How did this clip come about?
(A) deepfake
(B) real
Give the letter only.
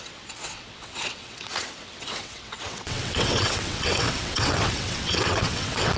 A